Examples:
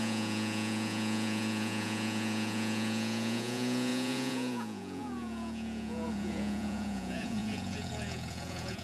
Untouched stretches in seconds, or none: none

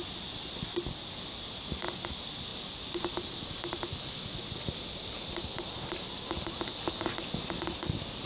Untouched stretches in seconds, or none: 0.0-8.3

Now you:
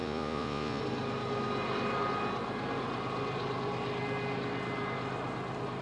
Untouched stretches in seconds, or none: 0.8-5.8

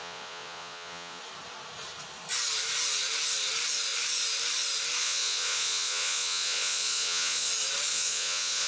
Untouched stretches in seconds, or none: 1.2-5.0; 7.5-7.9